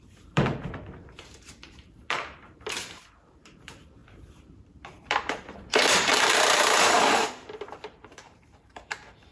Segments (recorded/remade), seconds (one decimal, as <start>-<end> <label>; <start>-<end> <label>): 0.0-9.3 remade